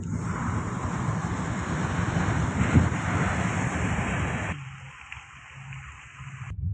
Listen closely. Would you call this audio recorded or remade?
recorded